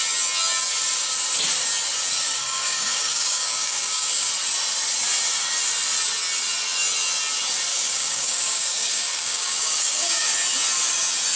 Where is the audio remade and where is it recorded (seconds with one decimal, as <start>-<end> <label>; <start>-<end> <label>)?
0.0-2.4 recorded; 2.4-4.3 remade; 4.3-7.7 recorded; 7.7-10.3 remade; 10.3-11.4 recorded